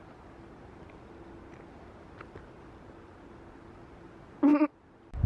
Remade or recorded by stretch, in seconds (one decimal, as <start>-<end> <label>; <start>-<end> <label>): 0.0-5.3 recorded